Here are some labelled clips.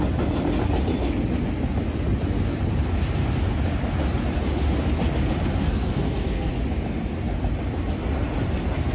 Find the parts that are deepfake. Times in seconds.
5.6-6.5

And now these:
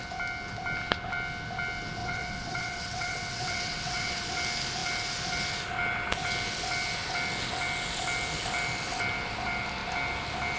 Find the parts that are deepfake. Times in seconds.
2.0-4.2

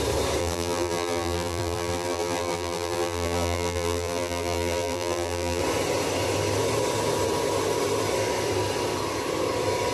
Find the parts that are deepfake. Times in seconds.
0.4-5.6

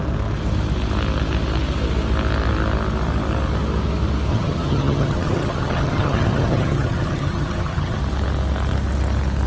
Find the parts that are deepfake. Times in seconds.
4.3-8.0

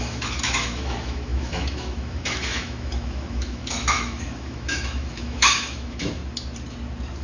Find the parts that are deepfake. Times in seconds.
0.0-6.2